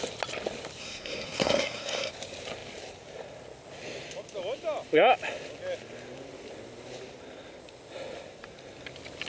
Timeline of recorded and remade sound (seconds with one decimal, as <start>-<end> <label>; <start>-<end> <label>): 0.0-0.8 recorded; 0.8-2.1 remade; 2.1-9.3 recorded